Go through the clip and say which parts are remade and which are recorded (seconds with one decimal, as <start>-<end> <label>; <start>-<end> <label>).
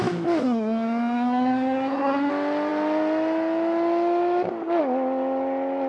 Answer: 0.0-0.4 recorded; 0.4-2.3 remade; 2.3-5.9 recorded